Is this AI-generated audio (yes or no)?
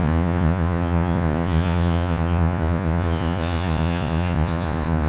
yes